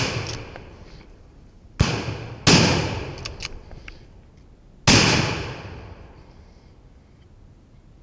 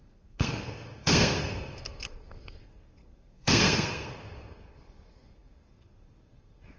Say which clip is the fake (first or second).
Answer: second